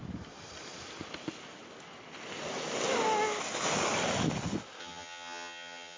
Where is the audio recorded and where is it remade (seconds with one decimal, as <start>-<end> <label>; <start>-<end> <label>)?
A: 0.0-4.8 recorded; 4.8-6.0 remade